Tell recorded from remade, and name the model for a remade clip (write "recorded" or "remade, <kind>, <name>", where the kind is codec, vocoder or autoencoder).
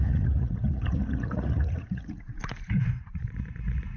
remade, vocoder, Vocos